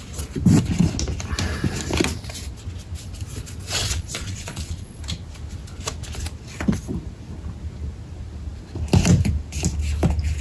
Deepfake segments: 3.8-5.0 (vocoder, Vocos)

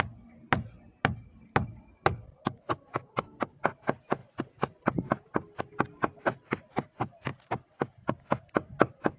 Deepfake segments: none

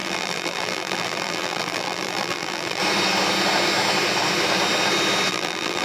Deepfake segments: 0.0-2.8 (vocoder, BigVGAN v2); 5.3-5.8

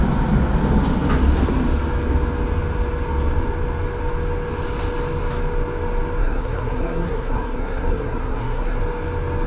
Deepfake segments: 6.2-8.8 (codec, SNAC)

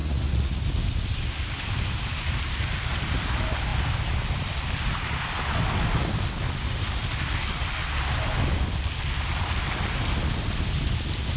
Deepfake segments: 0.0-0.6 (vocoder, Vocos)

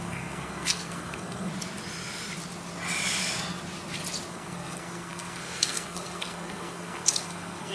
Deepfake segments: 0.0-1.5 (codec, SNAC); 4.3-7.7

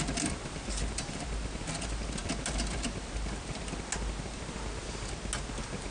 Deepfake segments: none

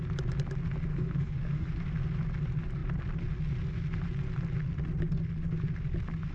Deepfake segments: 0.9-1.7 (codec, DAC)